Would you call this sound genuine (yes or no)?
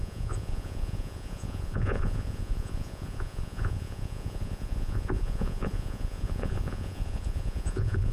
no